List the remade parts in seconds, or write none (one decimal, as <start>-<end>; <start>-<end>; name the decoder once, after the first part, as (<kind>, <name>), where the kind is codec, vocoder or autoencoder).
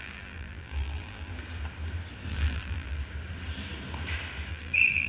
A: 0.0-1.3 (vocoder, BigVGAN v2); 2.3-3.0; 4.5-5.1